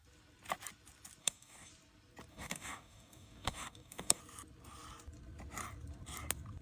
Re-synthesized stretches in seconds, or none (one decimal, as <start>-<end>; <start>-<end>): 1.2-1.7; 2.3-4.2